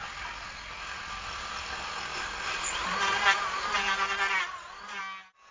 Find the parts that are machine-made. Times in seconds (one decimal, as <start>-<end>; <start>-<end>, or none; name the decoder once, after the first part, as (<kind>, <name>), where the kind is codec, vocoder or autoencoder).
2.1-5.0 (vocoder, BigVGAN v2)